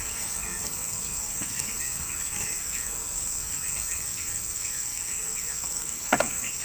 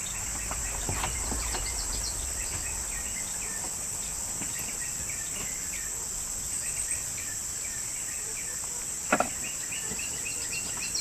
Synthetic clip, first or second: first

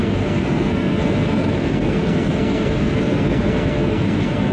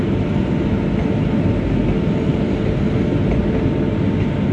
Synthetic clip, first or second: first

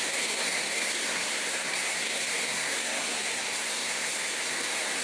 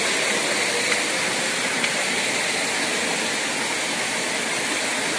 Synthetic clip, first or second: first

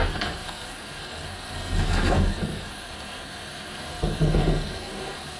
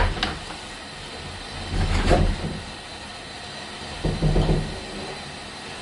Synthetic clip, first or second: first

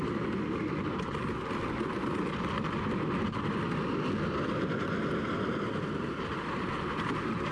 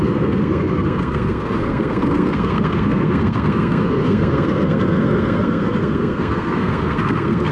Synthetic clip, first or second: second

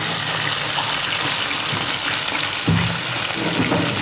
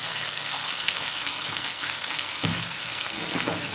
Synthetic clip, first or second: second